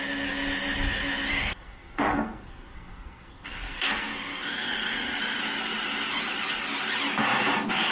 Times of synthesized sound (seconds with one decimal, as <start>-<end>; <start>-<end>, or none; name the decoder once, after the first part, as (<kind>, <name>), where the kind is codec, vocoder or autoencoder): 1.4-5.2 (codec, SNAC)